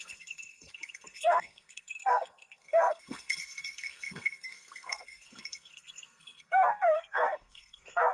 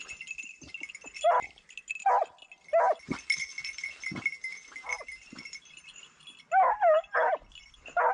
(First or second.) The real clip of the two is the second